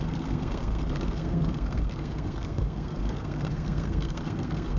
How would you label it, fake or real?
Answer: fake